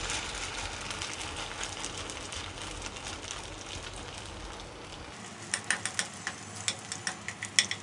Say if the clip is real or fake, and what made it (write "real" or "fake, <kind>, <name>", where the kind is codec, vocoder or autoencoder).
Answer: real